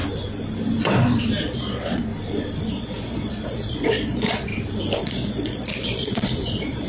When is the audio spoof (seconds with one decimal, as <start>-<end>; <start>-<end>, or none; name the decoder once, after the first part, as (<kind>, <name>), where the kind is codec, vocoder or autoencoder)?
1.4-2.1 (vocoder, Vocos); 2.7-4.5; 5.0-6.9